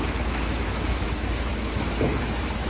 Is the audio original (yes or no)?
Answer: no